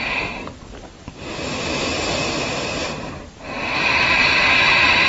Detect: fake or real real